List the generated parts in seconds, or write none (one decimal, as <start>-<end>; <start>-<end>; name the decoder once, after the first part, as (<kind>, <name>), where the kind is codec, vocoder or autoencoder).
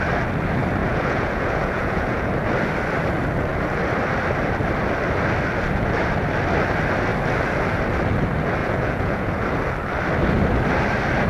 0.8-2.3 (vocoder, Vocos); 8.6-9.4